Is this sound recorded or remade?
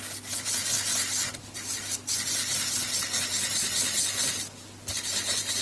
recorded